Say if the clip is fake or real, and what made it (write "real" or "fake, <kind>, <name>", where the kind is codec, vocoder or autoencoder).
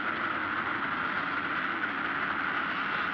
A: real